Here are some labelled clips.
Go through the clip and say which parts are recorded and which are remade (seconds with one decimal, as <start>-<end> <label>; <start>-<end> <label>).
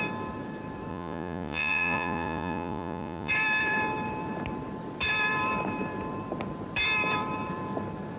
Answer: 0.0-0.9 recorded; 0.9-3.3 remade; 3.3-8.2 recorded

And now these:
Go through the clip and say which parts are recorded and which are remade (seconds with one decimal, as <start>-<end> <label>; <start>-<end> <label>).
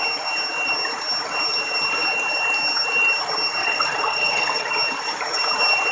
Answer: 0.0-3.6 recorded; 3.6-4.7 remade; 4.7-5.9 recorded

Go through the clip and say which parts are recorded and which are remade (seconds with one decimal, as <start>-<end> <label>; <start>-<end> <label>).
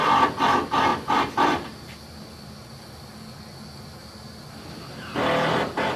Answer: 0.0-6.0 recorded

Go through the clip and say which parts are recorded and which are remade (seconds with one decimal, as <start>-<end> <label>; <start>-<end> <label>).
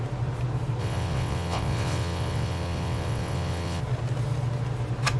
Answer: 0.0-0.8 recorded; 0.8-3.8 remade; 3.8-5.2 recorded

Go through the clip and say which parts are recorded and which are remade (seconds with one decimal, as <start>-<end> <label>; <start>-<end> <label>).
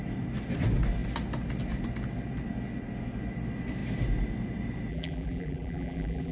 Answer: 0.0-4.9 recorded; 4.9-6.3 remade